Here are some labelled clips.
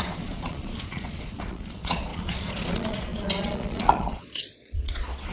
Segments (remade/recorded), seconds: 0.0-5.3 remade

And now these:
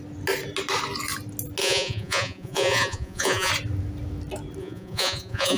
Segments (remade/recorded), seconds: 0.0-1.6 recorded; 1.6-3.5 remade; 3.5-4.6 recorded; 4.6-5.6 remade

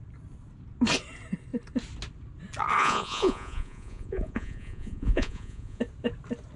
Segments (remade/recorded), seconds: 0.0-2.8 recorded; 2.8-5.8 remade; 5.8-6.6 recorded

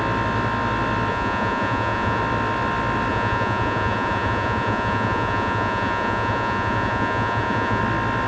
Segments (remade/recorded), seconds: 0.0-1.1 recorded; 1.1-2.2 remade; 2.2-3.1 recorded; 3.1-7.8 remade; 7.8-8.3 recorded

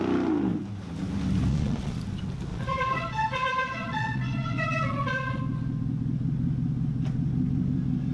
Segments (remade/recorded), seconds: 0.0-1.5 recorded; 1.5-2.0 remade; 2.0-2.5 recorded; 2.5-5.4 remade; 5.4-8.1 recorded